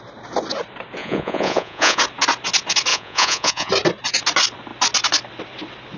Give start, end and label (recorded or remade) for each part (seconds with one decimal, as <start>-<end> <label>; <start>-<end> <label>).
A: 0.0-1.0 recorded; 1.0-2.0 remade; 2.0-2.9 recorded; 2.9-3.7 remade; 3.7-6.0 recorded

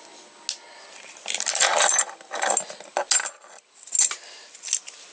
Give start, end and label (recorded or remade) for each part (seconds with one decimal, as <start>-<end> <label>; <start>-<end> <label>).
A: 0.0-5.1 recorded